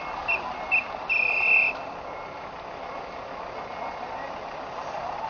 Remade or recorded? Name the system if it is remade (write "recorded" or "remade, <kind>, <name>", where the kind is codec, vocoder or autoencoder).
recorded